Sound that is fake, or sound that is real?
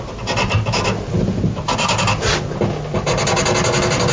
real